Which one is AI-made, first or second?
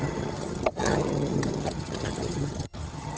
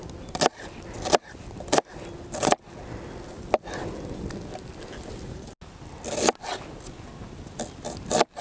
first